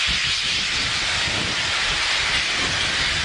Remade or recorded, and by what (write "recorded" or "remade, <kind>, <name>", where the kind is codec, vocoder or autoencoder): recorded